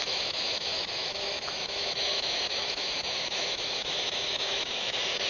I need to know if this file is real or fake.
fake